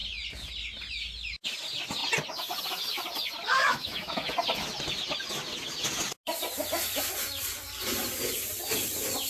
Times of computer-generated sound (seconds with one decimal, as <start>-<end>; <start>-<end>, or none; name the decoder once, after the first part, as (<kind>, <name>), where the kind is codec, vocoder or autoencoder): 3.6-4.3 (autoencoder, DAC-VAE)